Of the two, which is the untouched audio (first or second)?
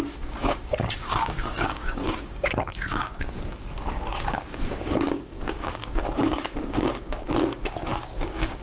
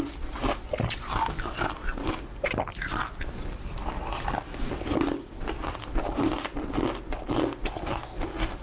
second